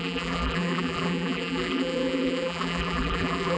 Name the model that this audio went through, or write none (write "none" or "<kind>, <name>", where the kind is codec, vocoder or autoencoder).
vocoder, BigVGAN v2